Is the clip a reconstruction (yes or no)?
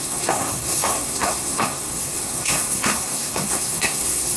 yes